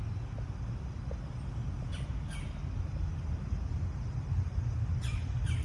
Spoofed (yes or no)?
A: no